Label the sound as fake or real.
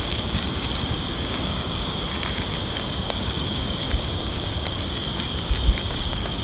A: fake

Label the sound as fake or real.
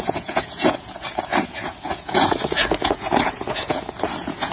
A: fake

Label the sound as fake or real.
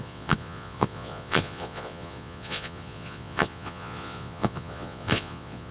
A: fake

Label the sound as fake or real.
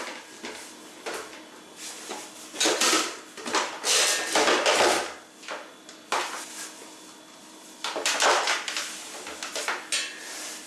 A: real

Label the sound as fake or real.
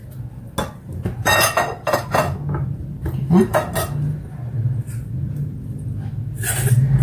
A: real